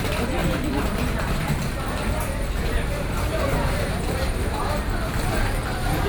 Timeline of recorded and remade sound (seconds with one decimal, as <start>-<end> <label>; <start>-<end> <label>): 0.0-0.4 recorded; 0.4-1.8 remade; 1.8-2.7 recorded; 2.7-4.6 remade; 4.6-6.1 recorded